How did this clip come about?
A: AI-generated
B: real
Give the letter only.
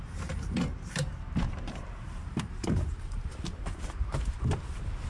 A